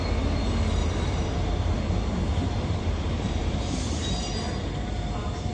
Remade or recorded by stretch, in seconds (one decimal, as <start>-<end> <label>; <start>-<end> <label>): 0.0-0.8 recorded; 0.8-4.1 remade; 4.1-5.5 recorded